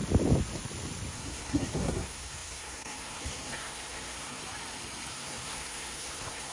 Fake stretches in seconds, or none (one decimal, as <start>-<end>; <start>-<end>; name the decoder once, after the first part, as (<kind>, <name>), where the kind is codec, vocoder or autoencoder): 1.1-4.4 (codec, SNAC); 5.1-6.5